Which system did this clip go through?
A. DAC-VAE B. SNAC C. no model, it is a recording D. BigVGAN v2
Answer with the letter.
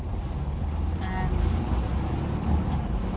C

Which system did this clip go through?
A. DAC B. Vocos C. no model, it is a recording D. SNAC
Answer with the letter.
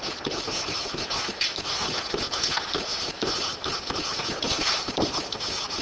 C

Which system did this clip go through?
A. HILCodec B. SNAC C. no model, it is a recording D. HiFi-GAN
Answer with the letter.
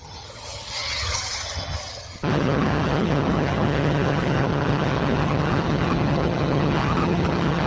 D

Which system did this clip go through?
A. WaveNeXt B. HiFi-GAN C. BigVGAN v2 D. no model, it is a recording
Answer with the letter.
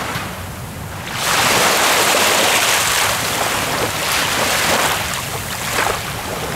D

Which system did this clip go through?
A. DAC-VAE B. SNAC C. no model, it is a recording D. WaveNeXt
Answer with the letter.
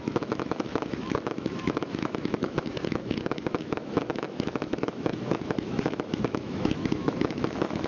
A